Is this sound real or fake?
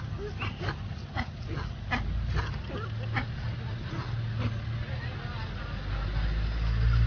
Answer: real